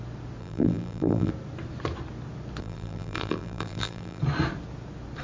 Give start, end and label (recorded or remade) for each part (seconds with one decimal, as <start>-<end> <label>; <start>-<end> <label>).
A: 0.0-0.4 recorded; 0.4-1.3 remade; 1.3-2.6 recorded; 2.6-4.2 remade; 4.2-5.2 recorded